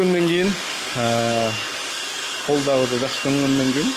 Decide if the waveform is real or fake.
fake